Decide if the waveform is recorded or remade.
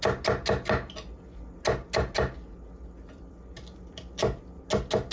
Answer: recorded